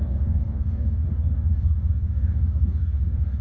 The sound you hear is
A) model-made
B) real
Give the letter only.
A